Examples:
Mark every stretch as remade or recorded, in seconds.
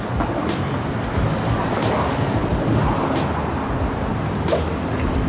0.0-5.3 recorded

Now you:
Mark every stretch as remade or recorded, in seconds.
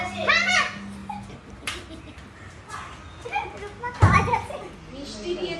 0.0-5.6 recorded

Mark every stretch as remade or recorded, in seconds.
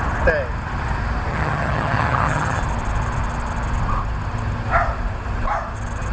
0.0-1.3 recorded; 1.3-2.6 remade; 2.6-6.1 recorded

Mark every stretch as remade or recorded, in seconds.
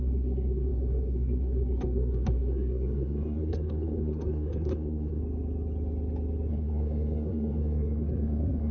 0.0-5.2 remade; 5.2-6.5 recorded; 6.5-8.7 remade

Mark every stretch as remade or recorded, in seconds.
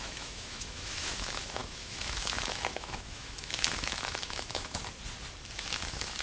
0.0-4.8 remade; 4.8-5.6 recorded; 5.6-6.2 remade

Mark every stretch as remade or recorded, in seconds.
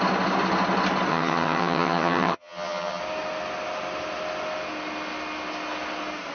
0.0-1.1 recorded; 1.1-3.0 remade; 3.0-6.3 recorded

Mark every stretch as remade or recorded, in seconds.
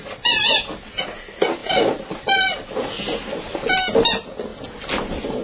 0.0-1.6 recorded; 1.6-2.8 remade; 2.8-5.4 recorded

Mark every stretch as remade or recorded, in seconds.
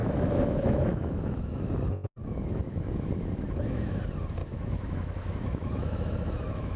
0.0-1.7 remade; 1.7-2.2 recorded; 2.2-4.0 remade; 4.0-4.4 recorded; 4.4-6.8 remade